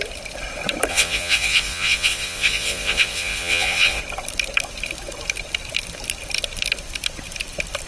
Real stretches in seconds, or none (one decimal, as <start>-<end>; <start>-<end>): 0.0-0.9; 4.0-7.9